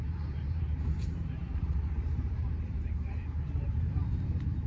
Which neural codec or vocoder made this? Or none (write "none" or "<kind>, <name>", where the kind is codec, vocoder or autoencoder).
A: vocoder, BigVGAN v2